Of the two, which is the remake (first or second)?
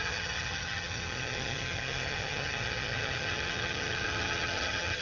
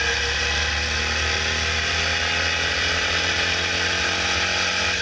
first